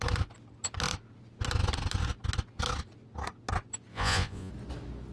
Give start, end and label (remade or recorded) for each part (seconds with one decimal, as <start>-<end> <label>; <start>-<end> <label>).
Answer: 0.0-3.9 recorded; 3.9-4.5 remade; 4.5-5.1 recorded